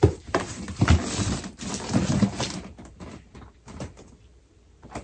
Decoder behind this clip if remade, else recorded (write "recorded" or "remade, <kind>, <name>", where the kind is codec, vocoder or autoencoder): remade, vocoder, BigVGAN v2